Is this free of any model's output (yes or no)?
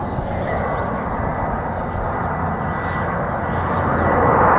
yes